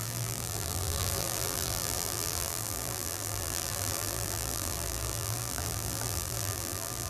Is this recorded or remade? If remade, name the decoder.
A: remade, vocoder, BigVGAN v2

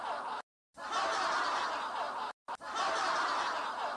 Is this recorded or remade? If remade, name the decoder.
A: recorded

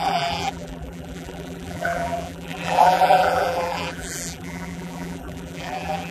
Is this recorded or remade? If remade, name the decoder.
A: remade, vocoder, BigVGAN v2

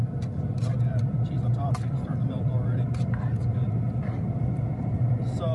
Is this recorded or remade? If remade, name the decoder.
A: remade, vocoder, BigVGAN v2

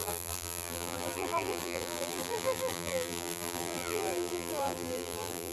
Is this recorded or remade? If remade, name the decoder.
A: remade, vocoder, BigVGAN v2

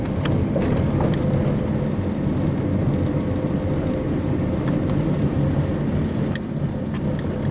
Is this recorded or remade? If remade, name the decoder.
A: recorded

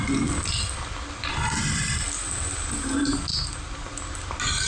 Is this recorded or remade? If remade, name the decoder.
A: recorded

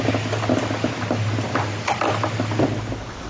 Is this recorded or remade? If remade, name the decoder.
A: recorded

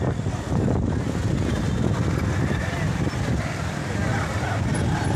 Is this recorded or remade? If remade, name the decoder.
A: recorded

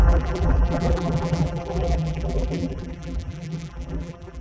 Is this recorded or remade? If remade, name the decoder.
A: remade, vocoder, BigVGAN v2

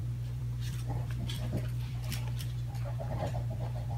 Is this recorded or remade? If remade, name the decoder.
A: remade, vocoder, BigVGAN v2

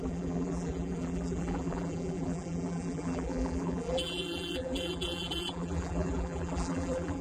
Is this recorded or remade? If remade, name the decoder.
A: remade, vocoder, BigVGAN v2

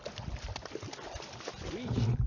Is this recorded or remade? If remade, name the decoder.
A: recorded